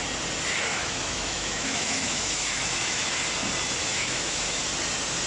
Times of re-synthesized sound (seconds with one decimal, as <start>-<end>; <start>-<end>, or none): 0.7-3.1; 3.9-4.6